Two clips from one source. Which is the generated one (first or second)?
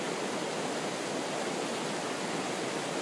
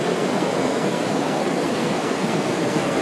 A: second